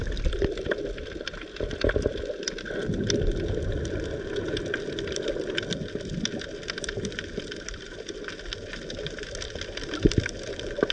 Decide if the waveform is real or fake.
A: real